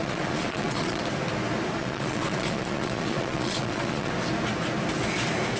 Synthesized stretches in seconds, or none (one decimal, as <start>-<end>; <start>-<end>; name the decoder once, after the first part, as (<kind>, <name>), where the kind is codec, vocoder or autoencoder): 0.0-1.0 (vocoder, Vocos); 1.8-4.1